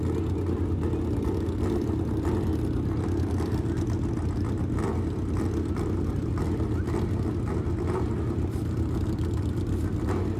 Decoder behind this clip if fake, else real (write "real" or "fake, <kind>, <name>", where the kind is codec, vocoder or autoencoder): real